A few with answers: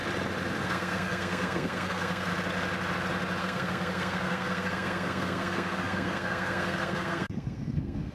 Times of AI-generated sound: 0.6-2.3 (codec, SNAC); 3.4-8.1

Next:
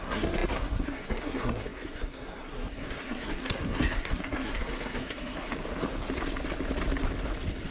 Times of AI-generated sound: 0.0-5.5 (codec, SNAC)

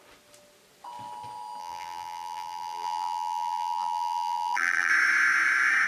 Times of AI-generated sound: 1.6-4.9 (vocoder, BigVGAN v2)

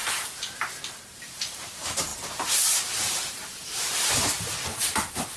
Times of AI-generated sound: 0.8-5.4 (vocoder, BigVGAN v2)

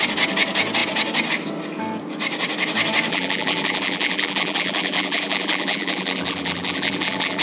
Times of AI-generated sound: 3.1-7.4 (vocoder, BigVGAN v2)

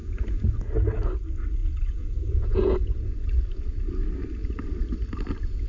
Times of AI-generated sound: 0.0-0.7 (vocoder, Vocos); 1.6-3.1